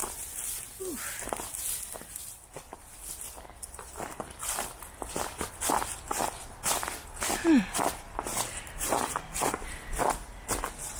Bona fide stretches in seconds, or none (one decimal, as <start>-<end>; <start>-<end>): 0.0-8.3; 9.2-11.0